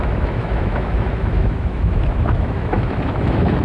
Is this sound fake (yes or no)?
yes